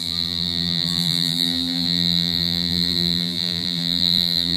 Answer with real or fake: fake